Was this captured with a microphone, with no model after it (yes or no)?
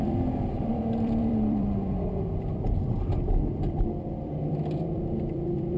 no